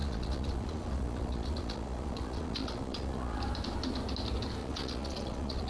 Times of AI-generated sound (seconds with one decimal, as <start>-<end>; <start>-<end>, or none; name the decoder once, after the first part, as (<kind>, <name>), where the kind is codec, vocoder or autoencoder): 0.0-3.4 (vocoder, Vocos); 4.6-5.7